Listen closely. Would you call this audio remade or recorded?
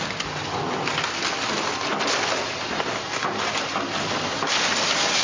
recorded